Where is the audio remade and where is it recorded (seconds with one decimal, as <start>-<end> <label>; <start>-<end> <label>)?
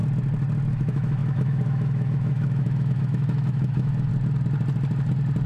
0.0-0.7 recorded; 0.7-4.1 remade; 4.1-5.5 recorded